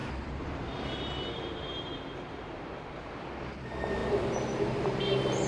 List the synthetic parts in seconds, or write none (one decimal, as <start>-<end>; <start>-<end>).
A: 0.0-2.6; 4.0-5.0

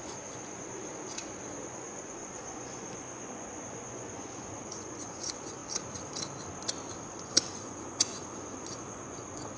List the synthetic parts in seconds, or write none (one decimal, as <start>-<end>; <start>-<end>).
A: 0.0-0.9; 1.6-5.6; 7.0-9.6

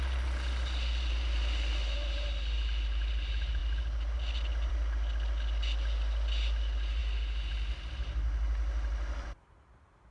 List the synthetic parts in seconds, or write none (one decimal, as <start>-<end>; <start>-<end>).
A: none

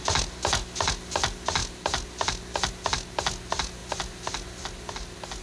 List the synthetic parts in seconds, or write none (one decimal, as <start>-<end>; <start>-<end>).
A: 1.6-2.7

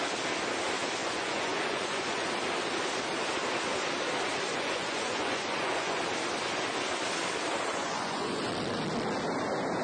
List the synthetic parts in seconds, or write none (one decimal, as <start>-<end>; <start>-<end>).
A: 1.0-2.3; 4.5-6.0; 7.7-8.4

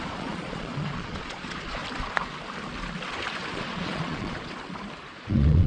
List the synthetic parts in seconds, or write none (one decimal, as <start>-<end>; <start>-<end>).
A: 0.0-1.8; 3.5-4.6; 5.1-5.7

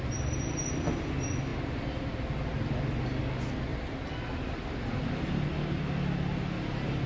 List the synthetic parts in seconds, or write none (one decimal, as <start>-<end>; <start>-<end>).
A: 1.5-2.1; 3.7-5.8

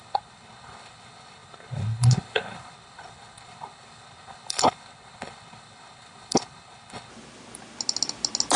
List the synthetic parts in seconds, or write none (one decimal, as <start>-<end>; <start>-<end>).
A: 0.0-7.1